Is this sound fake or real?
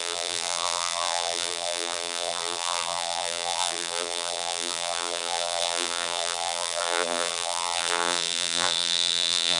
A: fake